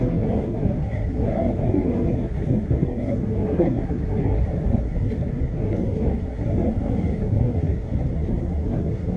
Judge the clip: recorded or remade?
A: remade